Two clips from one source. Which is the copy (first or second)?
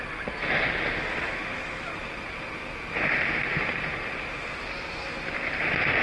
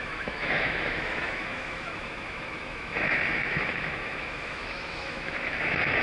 second